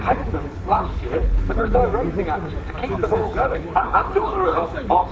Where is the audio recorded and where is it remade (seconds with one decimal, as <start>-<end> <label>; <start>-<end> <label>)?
0.0-1.8 remade; 1.8-2.9 recorded; 2.9-5.1 remade